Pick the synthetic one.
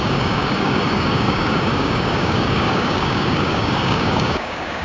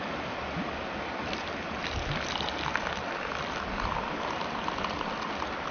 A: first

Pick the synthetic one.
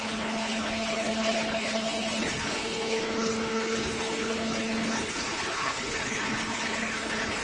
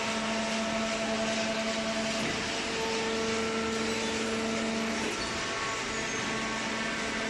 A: first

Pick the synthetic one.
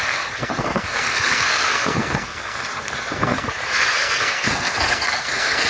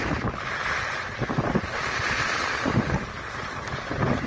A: first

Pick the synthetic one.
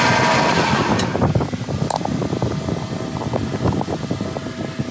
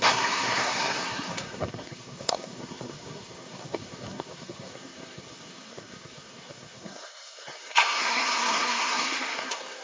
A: second